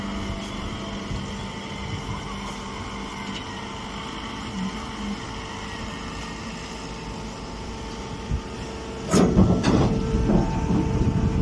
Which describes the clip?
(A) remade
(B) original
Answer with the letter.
B